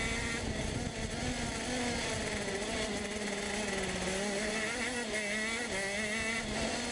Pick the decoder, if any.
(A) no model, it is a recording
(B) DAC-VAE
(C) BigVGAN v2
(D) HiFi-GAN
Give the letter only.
A